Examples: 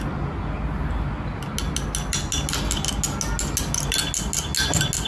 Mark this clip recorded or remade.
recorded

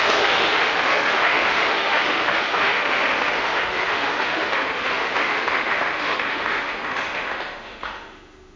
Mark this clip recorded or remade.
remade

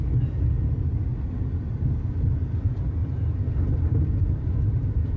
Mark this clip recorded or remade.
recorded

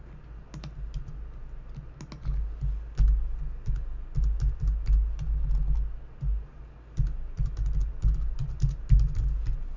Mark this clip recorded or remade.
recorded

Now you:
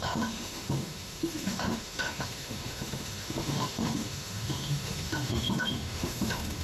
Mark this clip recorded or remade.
remade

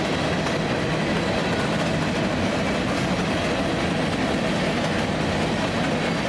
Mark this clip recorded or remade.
recorded